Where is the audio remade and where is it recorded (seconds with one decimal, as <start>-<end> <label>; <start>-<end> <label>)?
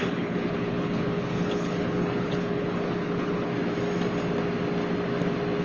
0.0-3.5 remade; 3.5-5.6 recorded